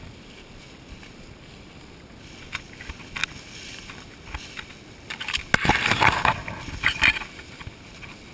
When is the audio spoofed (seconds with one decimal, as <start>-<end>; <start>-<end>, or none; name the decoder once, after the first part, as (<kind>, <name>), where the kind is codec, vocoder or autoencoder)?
none

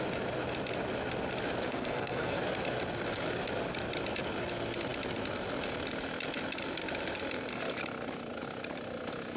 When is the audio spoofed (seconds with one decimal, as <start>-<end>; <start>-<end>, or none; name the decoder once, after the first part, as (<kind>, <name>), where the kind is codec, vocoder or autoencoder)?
1.7-2.4 (codec, SNAC)

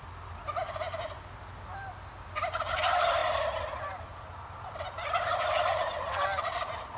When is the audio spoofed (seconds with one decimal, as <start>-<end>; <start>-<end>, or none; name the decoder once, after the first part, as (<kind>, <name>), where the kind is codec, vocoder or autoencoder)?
none

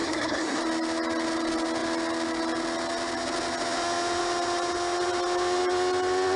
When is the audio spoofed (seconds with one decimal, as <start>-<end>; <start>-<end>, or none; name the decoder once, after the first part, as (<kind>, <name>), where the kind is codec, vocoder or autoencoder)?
0.0-0.6 (codec, SNAC)

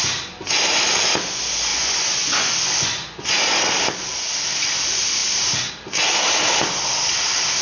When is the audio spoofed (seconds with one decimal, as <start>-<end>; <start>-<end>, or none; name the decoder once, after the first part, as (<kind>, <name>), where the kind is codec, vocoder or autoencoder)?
1.7-3.6 (vocoder, Vocos)

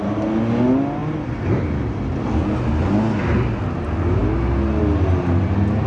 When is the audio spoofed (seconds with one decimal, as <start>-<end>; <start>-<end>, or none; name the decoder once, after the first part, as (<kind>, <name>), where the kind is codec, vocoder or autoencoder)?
none

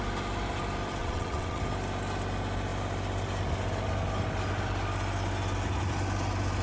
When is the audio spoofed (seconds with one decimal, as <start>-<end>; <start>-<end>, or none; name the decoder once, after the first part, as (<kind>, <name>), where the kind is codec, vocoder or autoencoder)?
1.0-1.6 (vocoder, WaveNeXt)

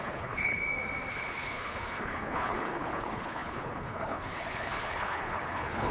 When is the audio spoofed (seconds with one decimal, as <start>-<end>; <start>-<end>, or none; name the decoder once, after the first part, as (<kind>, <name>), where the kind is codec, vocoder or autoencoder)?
0.0-0.6 (codec, HILCodec); 1.1-5.9